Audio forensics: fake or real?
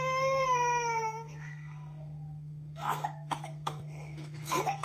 fake